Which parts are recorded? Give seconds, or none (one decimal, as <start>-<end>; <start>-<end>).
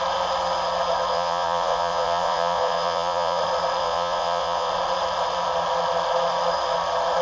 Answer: 0.0-1.1; 3.4-3.8; 4.7-7.2